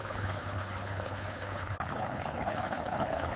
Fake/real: fake